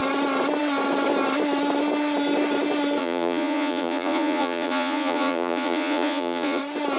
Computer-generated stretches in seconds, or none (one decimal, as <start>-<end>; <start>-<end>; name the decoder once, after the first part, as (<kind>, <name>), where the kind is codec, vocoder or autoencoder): 3.0-6.6 (vocoder, Vocos)